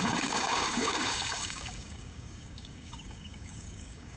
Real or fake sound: fake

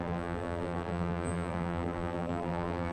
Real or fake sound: fake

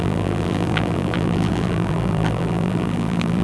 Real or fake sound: fake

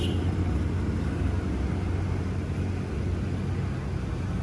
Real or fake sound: real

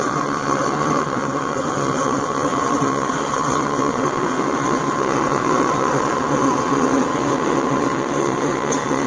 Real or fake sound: fake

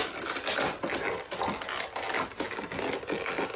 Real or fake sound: real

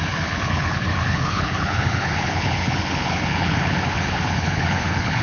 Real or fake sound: fake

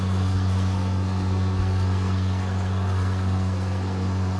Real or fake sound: fake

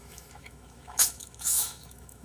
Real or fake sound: fake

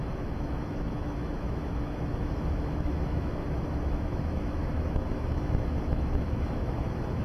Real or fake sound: fake